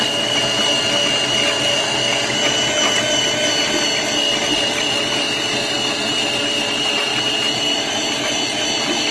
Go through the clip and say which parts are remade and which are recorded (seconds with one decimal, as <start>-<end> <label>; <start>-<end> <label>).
0.0-9.1 recorded